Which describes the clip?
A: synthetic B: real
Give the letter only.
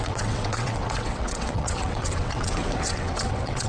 A